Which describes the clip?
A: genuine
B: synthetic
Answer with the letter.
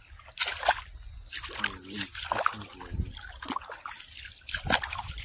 A